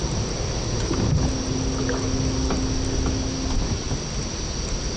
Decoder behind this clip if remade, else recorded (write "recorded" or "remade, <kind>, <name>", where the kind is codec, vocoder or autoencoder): recorded